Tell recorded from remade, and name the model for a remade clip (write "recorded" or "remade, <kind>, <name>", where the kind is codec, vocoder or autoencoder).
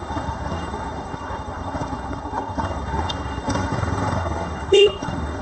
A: remade, codec, SNAC